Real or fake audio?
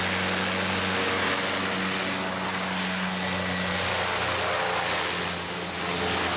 real